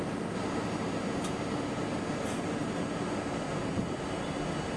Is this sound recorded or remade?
recorded